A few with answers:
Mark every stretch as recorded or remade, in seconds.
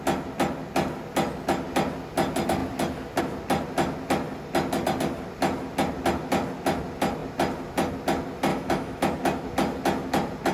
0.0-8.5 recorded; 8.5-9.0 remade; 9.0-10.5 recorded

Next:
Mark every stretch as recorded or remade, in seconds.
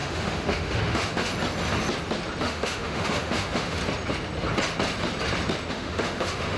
0.0-1.3 remade; 1.3-2.4 recorded; 2.4-3.8 remade; 3.8-5.7 recorded; 5.7-6.6 remade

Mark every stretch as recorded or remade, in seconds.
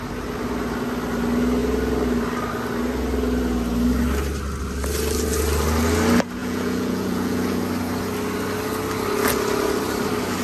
0.0-6.4 recorded; 6.4-7.6 remade; 7.6-10.4 recorded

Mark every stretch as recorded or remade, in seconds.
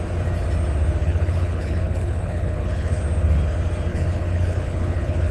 0.0-1.0 recorded; 1.0-3.0 remade; 3.0-3.9 recorded; 3.9-5.3 remade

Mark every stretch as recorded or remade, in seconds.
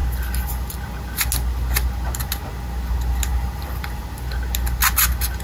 0.0-3.3 recorded; 3.3-4.0 remade; 4.0-5.4 recorded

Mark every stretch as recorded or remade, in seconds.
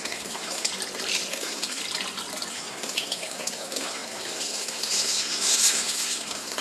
0.0-0.7 remade; 0.7-1.3 recorded; 1.3-1.8 remade; 1.8-2.5 recorded; 2.5-6.6 remade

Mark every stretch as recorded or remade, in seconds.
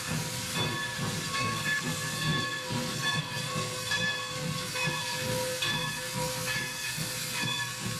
0.0-0.5 remade; 0.5-1.3 recorded; 1.3-8.0 remade